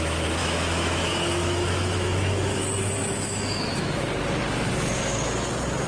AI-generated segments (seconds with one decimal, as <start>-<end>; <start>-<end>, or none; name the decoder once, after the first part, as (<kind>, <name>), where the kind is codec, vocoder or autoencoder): 0.4-3.9 (autoencoder, DAC-VAE)